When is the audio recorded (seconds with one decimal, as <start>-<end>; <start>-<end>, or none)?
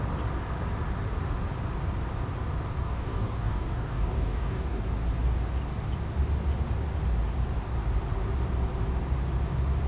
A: 0.0-2.8; 4.8-9.9